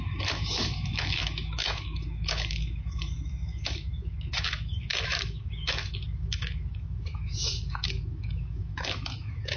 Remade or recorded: remade